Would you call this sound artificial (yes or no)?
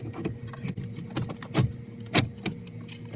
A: no